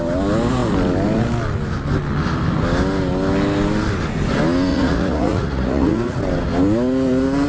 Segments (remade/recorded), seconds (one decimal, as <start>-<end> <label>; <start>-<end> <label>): 0.0-4.7 recorded; 4.7-6.2 remade; 6.2-7.5 recorded